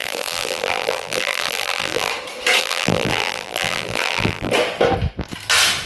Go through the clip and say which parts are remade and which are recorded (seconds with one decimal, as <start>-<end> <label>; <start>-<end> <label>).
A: 0.0-2.1 remade; 2.1-2.6 recorded; 2.6-4.5 remade; 4.5-5.9 recorded